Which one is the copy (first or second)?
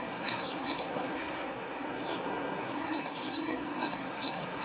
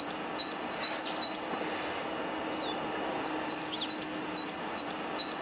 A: first